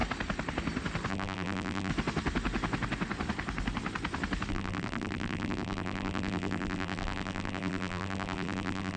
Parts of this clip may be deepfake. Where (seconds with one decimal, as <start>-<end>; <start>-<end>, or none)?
1.1-1.9; 4.5-9.0